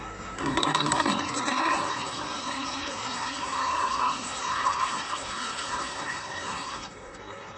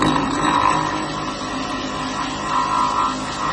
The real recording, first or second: second